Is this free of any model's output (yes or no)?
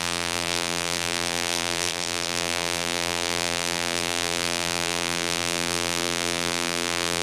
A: no